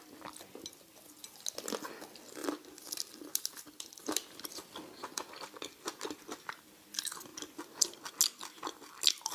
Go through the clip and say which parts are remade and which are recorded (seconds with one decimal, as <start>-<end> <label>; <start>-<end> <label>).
0.0-9.3 recorded